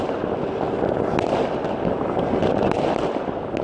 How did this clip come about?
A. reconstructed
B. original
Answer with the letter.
B